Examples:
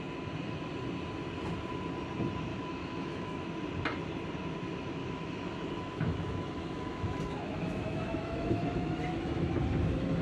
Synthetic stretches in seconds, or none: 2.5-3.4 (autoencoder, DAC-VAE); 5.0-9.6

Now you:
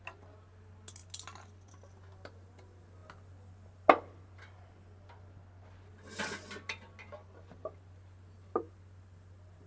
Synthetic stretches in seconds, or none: none

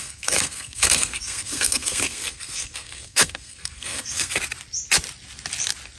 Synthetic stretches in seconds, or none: 0.0-4.4 (codec, SNAC)

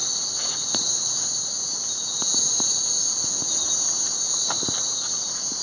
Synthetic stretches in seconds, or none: 0.0-1.0 (vocoder, Vocos)

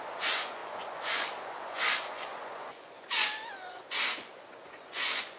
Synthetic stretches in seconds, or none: 0.0-5.4 (vocoder, Vocos)

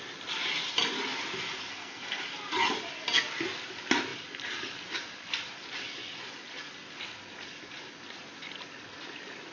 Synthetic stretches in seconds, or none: 1.7-2.2 (codec, SNAC)

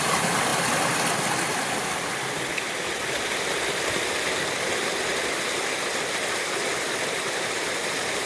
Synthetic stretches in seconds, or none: none

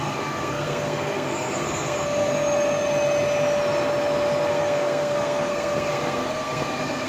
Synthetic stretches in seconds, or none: 0.0-2.3 (codec, SNAC); 4.5-7.1